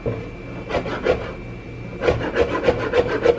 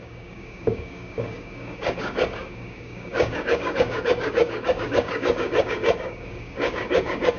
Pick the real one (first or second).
first